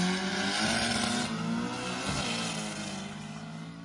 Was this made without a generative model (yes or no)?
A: yes